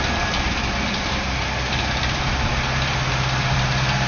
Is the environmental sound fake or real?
fake